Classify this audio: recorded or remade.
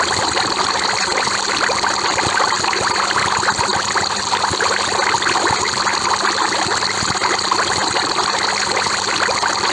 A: recorded